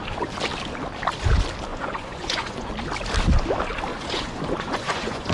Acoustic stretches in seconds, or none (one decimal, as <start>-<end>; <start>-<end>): 0.0-1.7; 2.7-3.9